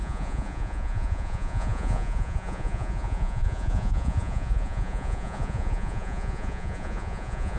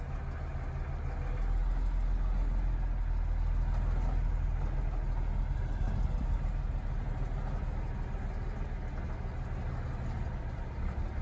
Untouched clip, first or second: second